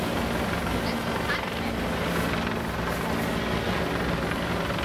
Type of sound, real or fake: real